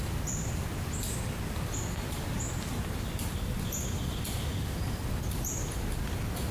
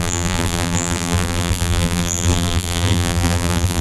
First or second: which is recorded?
first